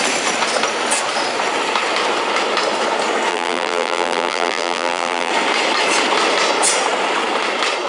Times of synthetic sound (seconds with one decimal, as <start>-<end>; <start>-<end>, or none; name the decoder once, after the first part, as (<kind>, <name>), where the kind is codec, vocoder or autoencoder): 3.3-5.3 (vocoder, BigVGAN v2)